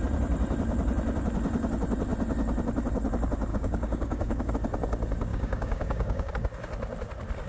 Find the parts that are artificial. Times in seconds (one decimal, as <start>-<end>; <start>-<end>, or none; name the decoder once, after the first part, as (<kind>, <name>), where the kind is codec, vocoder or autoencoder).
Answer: 3.5-4.5 (codec, DAC); 5.3-6.3